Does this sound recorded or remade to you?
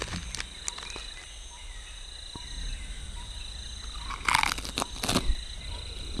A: recorded